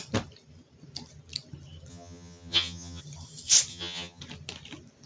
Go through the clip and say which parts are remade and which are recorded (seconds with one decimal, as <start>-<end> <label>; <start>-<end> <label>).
0.0-1.9 recorded; 1.9-3.0 remade; 3.0-3.7 recorded; 3.7-4.2 remade; 4.2-5.1 recorded